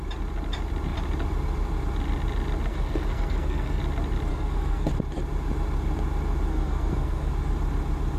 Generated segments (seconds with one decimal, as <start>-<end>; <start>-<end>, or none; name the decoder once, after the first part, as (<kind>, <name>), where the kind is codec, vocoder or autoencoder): 2.7-3.8 (codec, SNAC); 4.3-4.9; 6.5-7.3